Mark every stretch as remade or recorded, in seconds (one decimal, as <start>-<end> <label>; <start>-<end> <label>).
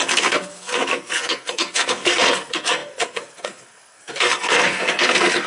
0.0-5.5 remade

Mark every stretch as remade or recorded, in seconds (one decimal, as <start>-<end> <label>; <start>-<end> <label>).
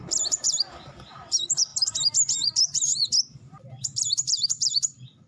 0.0-5.3 remade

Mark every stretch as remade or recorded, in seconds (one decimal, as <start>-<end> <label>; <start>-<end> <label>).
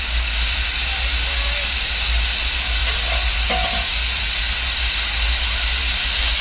0.0-6.4 recorded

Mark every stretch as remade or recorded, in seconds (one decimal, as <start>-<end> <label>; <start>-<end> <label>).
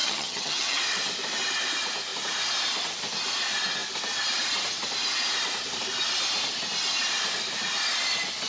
0.0-0.8 remade; 0.8-8.5 recorded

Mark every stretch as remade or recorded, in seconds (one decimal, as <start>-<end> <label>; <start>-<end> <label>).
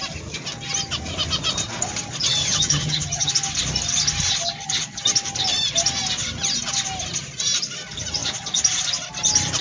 0.0-2.4 recorded; 2.4-3.3 remade; 3.3-9.6 recorded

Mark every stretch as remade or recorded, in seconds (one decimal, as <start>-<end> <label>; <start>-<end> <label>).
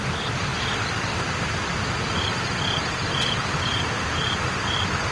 0.0-5.1 recorded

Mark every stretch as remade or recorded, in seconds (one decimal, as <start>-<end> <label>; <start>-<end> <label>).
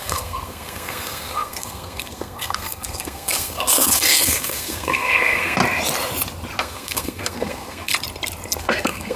0.0-5.6 remade; 5.6-6.6 recorded; 6.6-7.9 remade; 7.9-8.6 recorded; 8.6-9.2 remade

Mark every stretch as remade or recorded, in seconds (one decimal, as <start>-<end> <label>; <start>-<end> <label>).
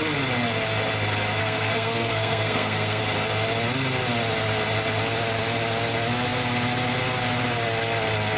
0.0-1.4 recorded; 1.4-3.0 remade; 3.0-8.4 recorded